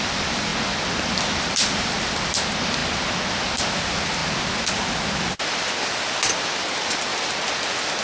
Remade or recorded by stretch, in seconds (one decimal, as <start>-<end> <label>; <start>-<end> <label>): 0.0-0.5 remade; 0.5-1.4 recorded; 1.4-2.8 remade; 2.8-3.4 recorded; 3.4-4.2 remade; 4.2-6.6 recorded; 6.6-7.1 remade; 7.1-8.0 recorded